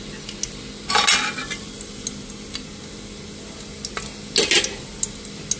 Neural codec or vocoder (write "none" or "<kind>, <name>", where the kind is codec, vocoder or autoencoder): none